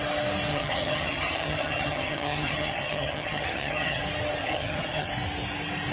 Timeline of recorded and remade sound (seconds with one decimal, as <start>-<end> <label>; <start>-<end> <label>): 0.0-0.5 recorded; 0.5-4.0 remade; 4.0-4.4 recorded; 4.4-5.1 remade; 5.1-5.9 recorded